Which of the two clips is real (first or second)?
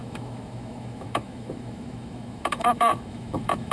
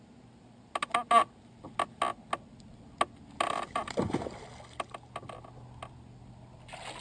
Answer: second